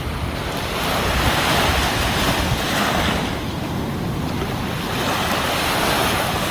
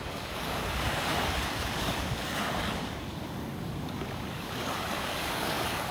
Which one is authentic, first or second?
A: first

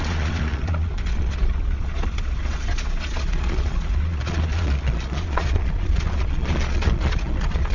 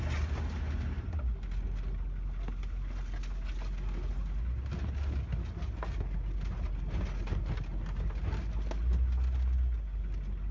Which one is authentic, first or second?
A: second